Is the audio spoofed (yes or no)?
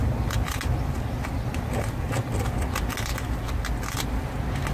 no